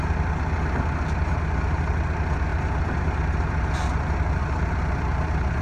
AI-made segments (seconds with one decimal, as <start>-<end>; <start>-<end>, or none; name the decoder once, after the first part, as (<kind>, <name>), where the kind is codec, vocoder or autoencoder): 2.5-3.5 (vocoder, BigVGAN v2)

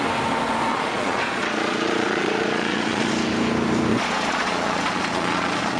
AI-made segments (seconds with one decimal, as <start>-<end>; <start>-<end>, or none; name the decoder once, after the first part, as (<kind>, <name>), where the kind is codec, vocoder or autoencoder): 0.7-3.1 (vocoder, Vocos); 3.9-5.8

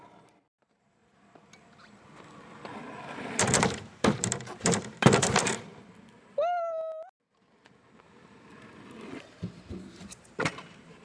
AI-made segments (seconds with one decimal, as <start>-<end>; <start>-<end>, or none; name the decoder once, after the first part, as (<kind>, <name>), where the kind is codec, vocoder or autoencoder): 0.0-1.0 (vocoder, BigVGAN v2); 3.2-5.7; 8.0-8.5; 10.0-11.0

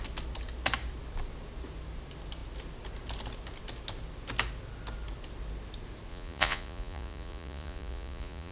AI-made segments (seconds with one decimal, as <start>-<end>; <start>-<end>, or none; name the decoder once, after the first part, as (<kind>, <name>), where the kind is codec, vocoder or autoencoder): 6.1-8.5 (vocoder, Vocos)

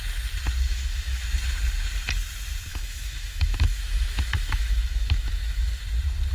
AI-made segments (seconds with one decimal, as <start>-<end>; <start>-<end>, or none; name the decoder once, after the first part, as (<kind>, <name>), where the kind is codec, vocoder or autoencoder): 0.7-1.2 (autoencoder, DAC-VAE); 2.7-5.8

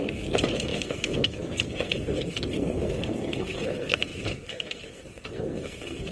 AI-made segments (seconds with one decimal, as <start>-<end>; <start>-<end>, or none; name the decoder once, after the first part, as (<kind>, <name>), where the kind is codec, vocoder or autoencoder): 0.0-6.1 (codec, SNAC)

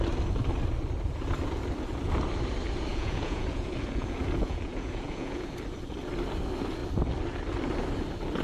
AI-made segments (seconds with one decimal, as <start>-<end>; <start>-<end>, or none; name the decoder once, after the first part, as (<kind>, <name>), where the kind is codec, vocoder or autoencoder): 2.9-5.5 (vocoder, Vocos)